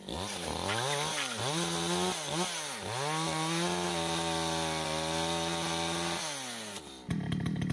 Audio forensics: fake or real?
real